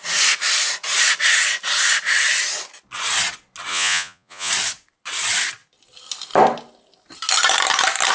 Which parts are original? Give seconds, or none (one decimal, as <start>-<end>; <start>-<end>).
0.0-3.7; 4.5-8.1